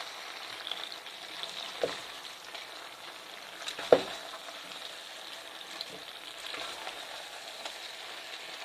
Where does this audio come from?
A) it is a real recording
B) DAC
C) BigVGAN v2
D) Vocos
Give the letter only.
C